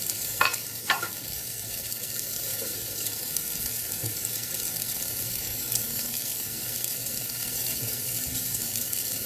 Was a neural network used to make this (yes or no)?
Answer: yes